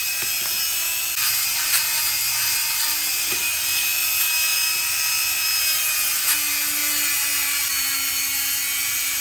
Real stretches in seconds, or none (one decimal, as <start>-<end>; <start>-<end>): none